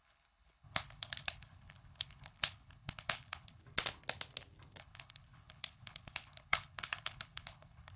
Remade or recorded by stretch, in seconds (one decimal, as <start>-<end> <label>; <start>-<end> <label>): 0.0-3.6 remade; 3.6-4.8 recorded; 4.8-8.0 remade

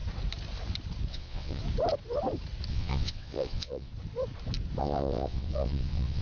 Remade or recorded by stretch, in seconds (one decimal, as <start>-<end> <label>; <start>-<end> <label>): 0.0-1.1 recorded; 1.1-1.6 remade; 1.6-2.7 recorded; 2.7-3.9 remade; 3.9-4.8 recorded; 4.8-6.2 remade

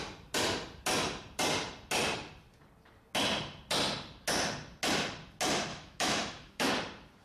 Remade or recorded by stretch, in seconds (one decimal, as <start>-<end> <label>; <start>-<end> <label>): 0.0-5.7 recorded; 5.7-6.7 remade; 6.7-7.2 recorded

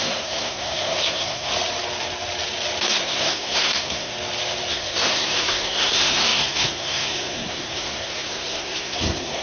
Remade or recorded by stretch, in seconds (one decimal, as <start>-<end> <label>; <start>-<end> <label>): 0.0-1.5 remade; 1.5-2.8 recorded; 2.8-4.1 remade; 4.1-4.7 recorded; 4.7-9.4 remade

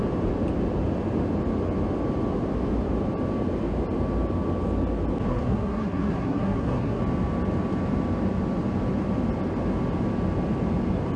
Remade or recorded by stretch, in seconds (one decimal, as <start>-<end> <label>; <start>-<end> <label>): 0.0-5.3 recorded; 5.3-7.0 remade; 7.0-11.2 recorded

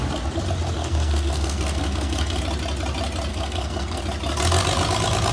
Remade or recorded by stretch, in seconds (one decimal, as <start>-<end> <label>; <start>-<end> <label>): 0.0-0.8 recorded; 0.8-2.4 remade; 2.4-3.3 recorded; 3.3-4.0 remade; 4.0-5.3 recorded

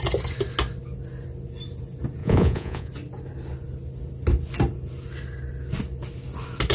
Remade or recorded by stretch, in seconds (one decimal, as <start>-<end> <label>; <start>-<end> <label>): 0.0-2.2 recorded; 2.2-2.9 remade; 2.9-6.7 recorded

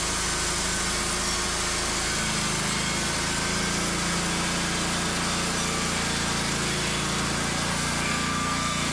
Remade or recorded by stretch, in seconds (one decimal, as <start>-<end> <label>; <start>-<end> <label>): 0.0-7.7 recorded; 7.7-8.9 remade